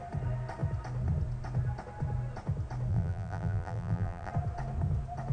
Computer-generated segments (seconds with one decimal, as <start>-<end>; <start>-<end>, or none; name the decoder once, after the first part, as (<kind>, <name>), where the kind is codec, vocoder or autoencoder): 2.9-4.3 (vocoder, BigVGAN v2)